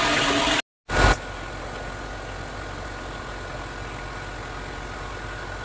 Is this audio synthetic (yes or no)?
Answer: no